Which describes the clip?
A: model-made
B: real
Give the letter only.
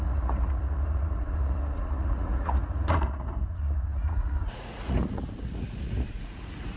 A